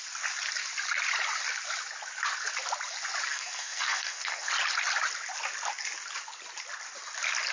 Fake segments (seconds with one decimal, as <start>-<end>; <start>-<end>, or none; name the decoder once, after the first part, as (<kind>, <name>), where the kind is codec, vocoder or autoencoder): 3.3-4.5 (codec, SNAC)